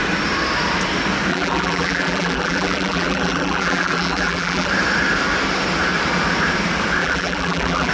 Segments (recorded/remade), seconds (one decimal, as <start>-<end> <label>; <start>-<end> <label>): 0.0-1.3 recorded; 1.3-4.7 remade; 4.7-7.0 recorded; 7.0-7.9 remade